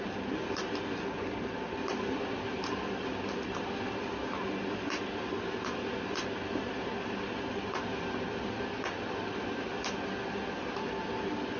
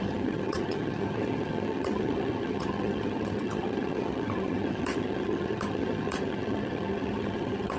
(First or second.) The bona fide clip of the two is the first